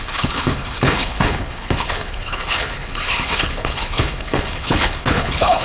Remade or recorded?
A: remade